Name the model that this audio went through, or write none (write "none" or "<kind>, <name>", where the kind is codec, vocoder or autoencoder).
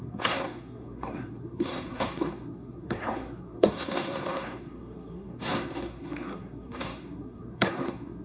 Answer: codec, SNAC